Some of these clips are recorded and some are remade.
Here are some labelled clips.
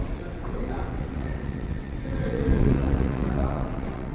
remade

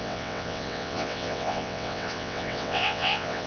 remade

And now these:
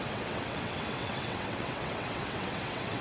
remade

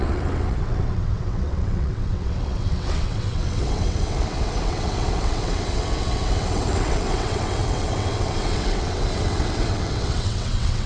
remade